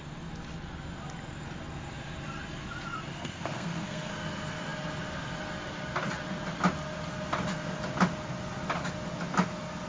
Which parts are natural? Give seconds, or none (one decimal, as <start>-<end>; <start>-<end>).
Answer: 0.0-3.1; 4.1-9.9